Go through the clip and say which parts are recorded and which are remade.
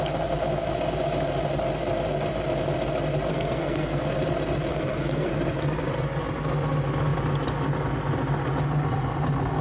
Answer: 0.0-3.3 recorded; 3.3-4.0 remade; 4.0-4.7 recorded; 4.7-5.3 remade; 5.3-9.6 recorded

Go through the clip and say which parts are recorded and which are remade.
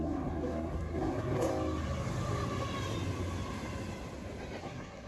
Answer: 0.0-1.5 remade; 1.5-4.6 recorded; 4.6-5.1 remade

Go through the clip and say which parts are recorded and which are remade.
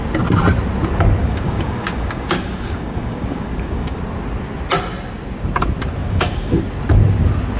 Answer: 0.0-1.2 recorded; 1.2-4.0 remade; 4.0-6.0 recorded; 6.0-6.6 remade; 6.6-7.6 recorded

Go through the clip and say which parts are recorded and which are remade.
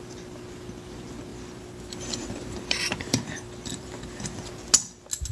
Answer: 0.0-1.3 recorded; 1.3-4.5 remade; 4.5-5.3 recorded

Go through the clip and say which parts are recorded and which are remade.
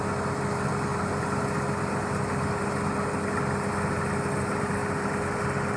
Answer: 0.0-5.8 recorded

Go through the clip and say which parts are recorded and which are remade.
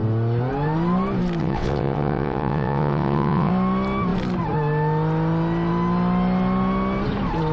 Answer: 0.0-1.4 recorded; 1.4-3.5 remade; 3.5-7.5 recorded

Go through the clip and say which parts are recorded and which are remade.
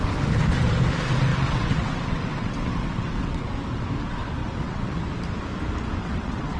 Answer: 0.0-1.3 recorded; 1.3-3.5 remade; 3.5-4.4 recorded; 4.4-5.0 remade; 5.0-6.0 recorded; 6.0-6.6 remade